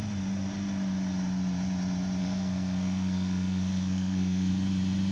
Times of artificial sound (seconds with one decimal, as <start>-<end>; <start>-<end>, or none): 2.2-4.5